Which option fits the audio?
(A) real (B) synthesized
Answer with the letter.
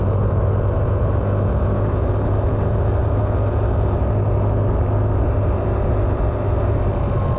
A